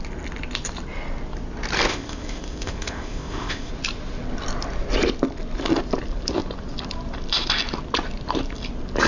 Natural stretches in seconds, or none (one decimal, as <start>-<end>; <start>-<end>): 0.0-1.9; 3.7-9.1